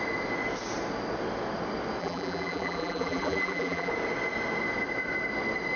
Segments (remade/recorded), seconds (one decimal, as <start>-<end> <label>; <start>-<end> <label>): 0.0-2.0 recorded; 2.0-3.9 remade; 3.9-5.8 recorded